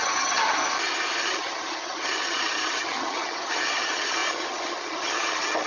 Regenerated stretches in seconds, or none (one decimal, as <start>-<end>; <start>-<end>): 0.0-0.6; 1.2-5.7